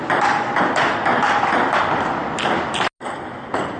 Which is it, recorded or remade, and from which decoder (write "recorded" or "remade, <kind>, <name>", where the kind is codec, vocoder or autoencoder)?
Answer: recorded